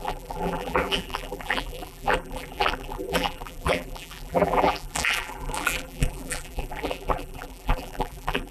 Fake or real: fake